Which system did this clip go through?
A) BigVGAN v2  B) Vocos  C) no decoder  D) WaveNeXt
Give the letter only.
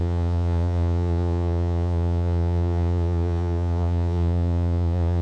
B